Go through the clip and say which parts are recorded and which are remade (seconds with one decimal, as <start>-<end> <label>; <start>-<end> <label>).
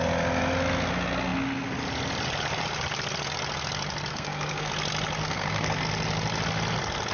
0.0-4.1 recorded; 4.1-4.7 remade; 4.7-5.2 recorded; 5.2-5.8 remade; 5.8-7.1 recorded